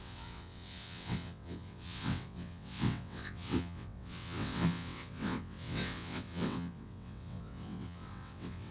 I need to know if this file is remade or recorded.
remade